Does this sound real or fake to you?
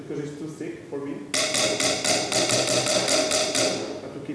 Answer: real